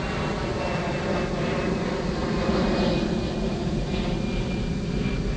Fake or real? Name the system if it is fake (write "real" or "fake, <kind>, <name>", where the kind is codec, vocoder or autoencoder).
real